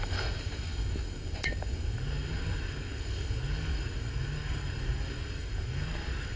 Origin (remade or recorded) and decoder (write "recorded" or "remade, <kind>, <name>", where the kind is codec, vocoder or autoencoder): remade, codec, DAC